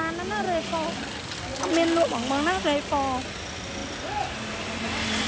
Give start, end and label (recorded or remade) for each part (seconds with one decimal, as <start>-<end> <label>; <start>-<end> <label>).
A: 0.0-5.3 recorded